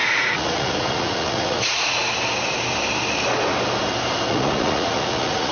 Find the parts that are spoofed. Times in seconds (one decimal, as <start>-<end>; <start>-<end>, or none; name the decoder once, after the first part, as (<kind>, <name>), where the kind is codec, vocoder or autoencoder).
0.0-2.0 (vocoder, Vocos); 4.3-5.5